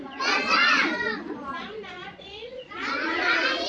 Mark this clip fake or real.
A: fake